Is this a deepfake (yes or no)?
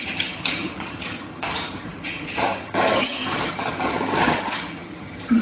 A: yes